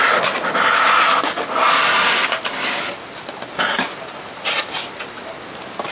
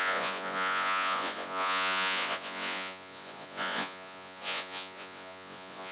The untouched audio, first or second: first